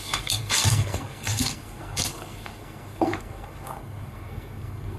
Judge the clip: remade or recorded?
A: remade